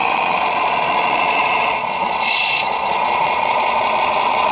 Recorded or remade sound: remade